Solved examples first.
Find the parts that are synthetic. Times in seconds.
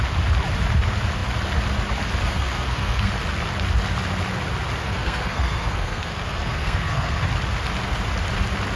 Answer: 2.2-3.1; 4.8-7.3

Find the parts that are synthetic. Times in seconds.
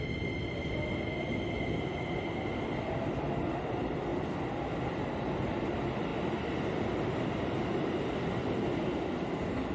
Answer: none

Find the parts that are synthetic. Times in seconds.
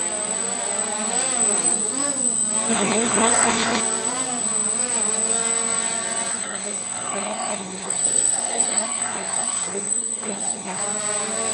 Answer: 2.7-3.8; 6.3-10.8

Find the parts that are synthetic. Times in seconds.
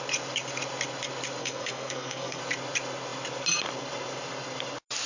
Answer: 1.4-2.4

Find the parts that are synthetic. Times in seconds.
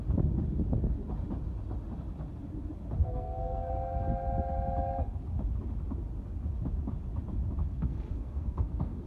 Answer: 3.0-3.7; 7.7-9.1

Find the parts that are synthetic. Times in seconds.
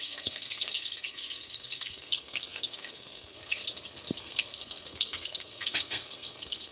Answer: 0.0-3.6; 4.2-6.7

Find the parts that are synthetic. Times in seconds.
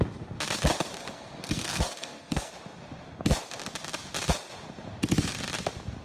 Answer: 1.0-2.5